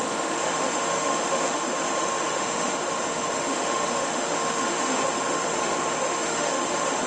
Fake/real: fake